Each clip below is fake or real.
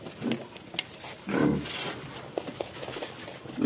real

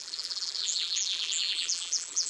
fake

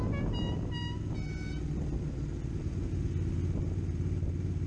real